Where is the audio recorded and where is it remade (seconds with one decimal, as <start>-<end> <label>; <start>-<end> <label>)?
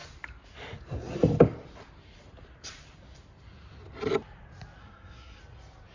0.0-4.8 recorded; 4.8-5.4 remade; 5.4-5.9 recorded